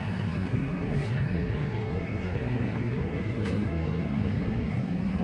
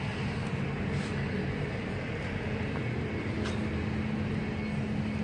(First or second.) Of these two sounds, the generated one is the first